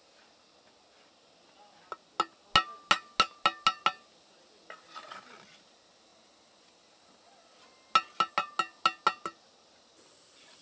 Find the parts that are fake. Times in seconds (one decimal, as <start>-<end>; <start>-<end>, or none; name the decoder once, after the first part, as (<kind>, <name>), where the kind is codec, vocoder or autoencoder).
none